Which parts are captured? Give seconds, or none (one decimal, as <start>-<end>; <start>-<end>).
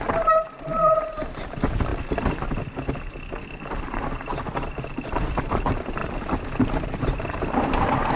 1.9-3.8; 6.0-6.8